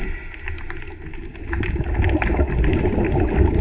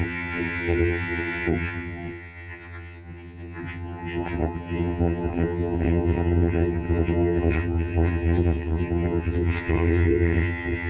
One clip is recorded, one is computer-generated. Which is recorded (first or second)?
first